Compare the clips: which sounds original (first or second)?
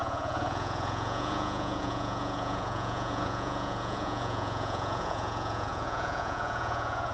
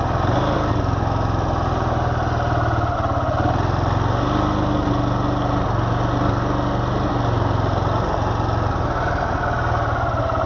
second